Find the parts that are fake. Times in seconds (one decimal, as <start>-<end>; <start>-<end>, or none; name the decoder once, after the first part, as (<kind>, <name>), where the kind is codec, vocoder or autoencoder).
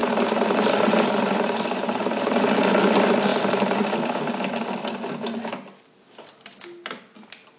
none